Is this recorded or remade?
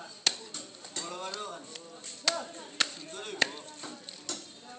recorded